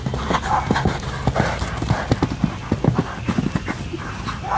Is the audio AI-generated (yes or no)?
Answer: no